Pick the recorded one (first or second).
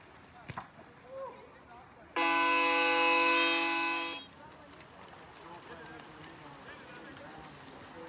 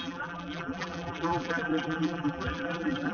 first